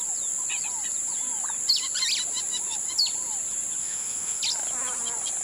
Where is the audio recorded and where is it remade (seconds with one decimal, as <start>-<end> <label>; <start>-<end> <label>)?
0.0-3.8 recorded; 3.8-4.4 remade; 4.4-5.4 recorded